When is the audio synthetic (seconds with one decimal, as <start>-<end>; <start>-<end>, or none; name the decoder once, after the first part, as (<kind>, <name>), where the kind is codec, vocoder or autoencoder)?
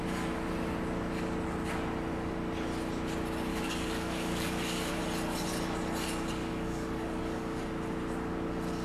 3.5-5.0 (codec, DAC); 6.4-7.6